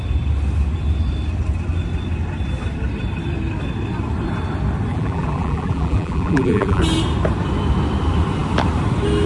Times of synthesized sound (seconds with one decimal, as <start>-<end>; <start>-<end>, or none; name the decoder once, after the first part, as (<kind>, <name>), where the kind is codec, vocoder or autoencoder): 4.9-6.8 (vocoder, BigVGAN v2)